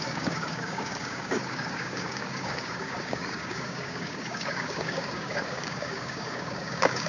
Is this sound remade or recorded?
remade